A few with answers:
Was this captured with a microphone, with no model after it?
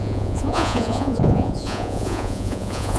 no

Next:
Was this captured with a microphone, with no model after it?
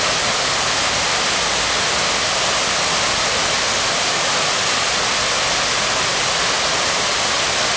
yes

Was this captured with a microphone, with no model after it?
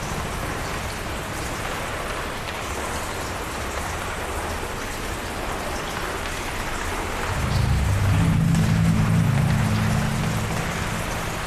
yes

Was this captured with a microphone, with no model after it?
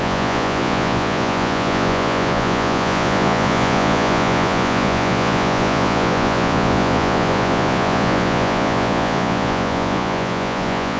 no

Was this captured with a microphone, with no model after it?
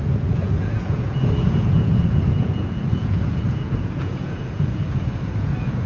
no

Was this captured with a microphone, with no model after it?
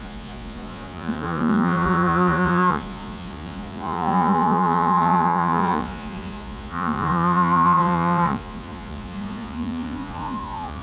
no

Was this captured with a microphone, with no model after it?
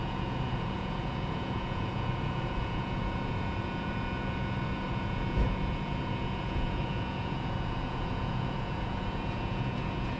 no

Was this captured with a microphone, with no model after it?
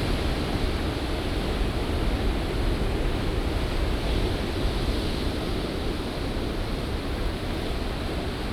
yes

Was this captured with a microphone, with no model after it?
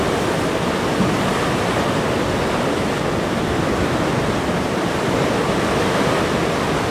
yes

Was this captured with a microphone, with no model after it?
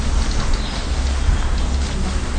yes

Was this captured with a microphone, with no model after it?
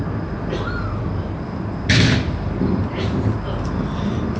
yes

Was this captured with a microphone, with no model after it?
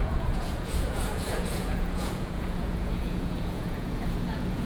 no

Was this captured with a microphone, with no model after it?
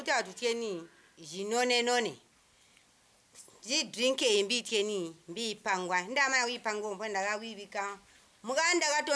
yes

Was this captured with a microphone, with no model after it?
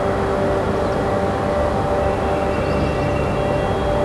yes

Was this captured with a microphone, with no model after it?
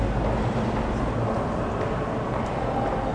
yes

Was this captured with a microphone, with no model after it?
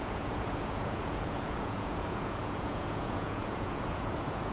no